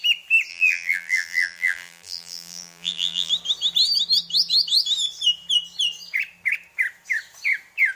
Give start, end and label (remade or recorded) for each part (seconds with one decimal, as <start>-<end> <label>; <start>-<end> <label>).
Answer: 0.0-0.5 recorded; 0.5-3.3 remade; 3.3-8.0 recorded